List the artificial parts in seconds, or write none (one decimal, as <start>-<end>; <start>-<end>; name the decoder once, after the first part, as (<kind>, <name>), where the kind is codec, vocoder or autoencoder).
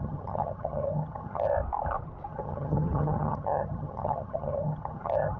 0.0-1.5 (vocoder, HiFi-GAN); 2.3-5.4